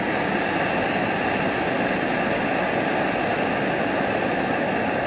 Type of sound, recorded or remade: recorded